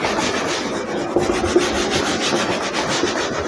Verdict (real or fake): real